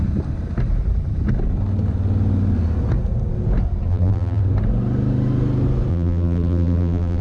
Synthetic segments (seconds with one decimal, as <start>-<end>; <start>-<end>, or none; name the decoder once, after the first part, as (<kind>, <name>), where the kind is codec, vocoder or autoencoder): 3.9-4.4 (vocoder, BigVGAN v2); 5.9-7.2